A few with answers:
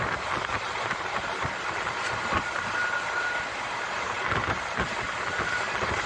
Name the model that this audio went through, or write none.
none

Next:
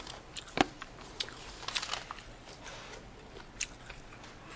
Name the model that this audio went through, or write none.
none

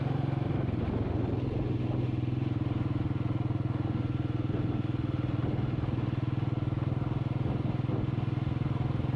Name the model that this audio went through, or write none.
none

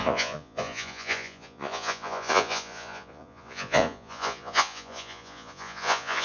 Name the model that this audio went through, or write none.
vocoder, Vocos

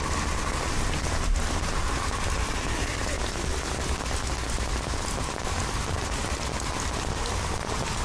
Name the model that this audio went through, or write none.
none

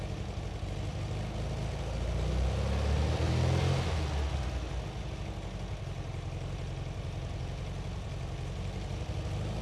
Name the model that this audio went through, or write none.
none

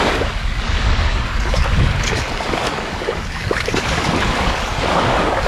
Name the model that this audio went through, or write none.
codec, DAC